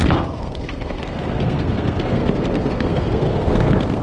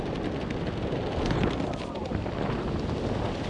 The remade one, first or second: first